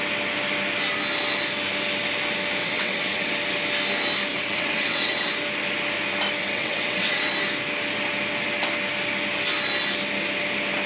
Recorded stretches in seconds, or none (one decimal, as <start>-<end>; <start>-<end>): 0.0-2.6; 3.3-4.3; 5.3-6.4; 7.3-10.9